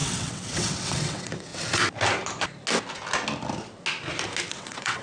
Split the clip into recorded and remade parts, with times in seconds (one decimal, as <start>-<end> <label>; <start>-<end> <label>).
0.0-1.5 remade; 1.5-4.5 recorded; 4.5-5.0 remade